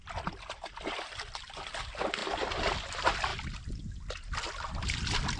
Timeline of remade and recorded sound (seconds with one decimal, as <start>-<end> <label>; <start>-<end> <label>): 0.0-5.4 recorded